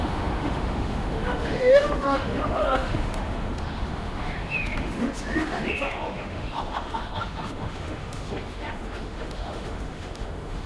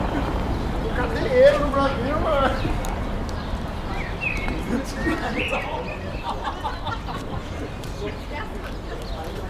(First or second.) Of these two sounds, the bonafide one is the second